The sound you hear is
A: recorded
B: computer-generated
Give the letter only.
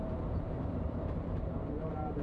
B